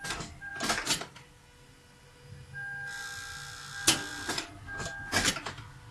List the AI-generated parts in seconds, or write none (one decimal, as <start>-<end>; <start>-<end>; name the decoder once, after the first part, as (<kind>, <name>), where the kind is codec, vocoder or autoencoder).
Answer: none